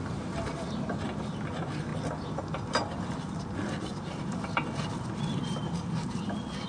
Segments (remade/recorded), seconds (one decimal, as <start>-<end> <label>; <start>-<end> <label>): 0.0-6.7 recorded